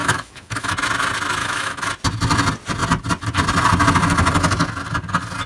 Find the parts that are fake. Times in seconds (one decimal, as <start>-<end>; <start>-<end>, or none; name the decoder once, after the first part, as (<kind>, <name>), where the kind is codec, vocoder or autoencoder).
0.0-0.7 (autoencoder, DAC-VAE); 1.4-1.9